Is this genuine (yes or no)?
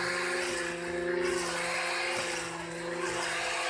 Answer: yes